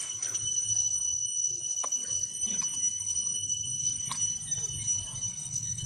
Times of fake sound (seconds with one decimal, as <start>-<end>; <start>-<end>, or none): 0.0-2.3; 2.9-4.0; 5.3-5.9